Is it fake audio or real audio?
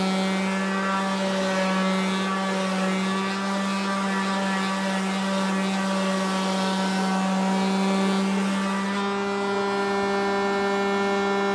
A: real